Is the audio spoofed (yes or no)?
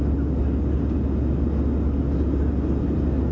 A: no